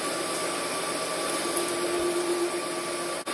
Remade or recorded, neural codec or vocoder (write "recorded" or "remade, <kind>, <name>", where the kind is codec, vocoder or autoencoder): recorded